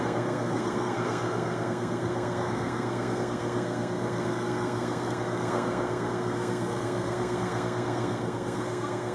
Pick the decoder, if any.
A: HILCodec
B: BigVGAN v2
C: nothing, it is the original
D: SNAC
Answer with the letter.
D